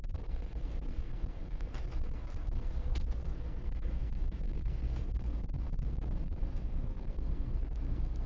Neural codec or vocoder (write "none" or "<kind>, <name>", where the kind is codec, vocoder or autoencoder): codec, SNAC